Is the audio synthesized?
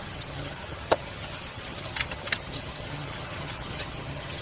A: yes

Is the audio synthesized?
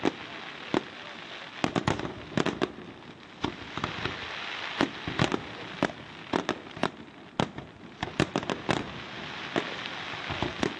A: no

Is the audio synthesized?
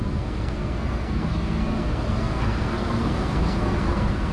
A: yes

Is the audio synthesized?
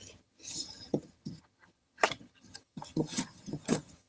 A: yes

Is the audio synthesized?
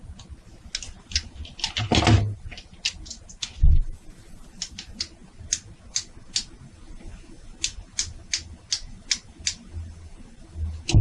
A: no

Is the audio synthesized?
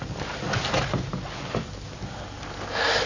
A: no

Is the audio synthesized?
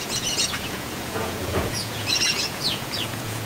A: yes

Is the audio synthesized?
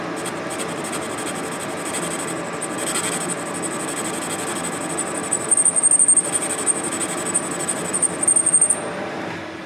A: no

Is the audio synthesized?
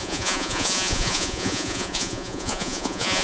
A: yes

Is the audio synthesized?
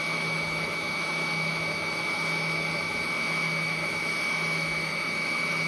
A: yes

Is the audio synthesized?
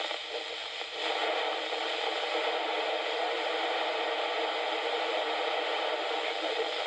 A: no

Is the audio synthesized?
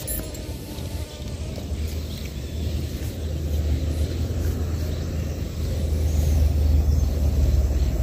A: no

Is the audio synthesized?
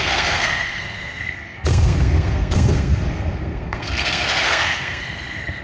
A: yes